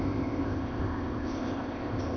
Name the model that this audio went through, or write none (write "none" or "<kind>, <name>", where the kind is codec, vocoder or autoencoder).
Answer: codec, ZipCodec